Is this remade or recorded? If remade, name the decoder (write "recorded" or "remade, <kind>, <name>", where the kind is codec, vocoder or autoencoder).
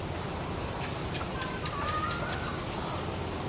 recorded